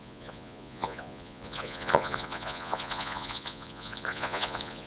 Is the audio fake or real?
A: fake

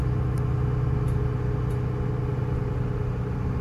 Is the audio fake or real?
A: real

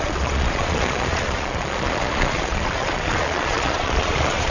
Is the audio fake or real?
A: fake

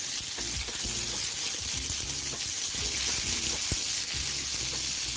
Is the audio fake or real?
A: real